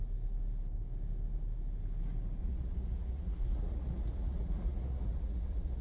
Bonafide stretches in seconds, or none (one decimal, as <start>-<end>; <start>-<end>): 0.0-2.4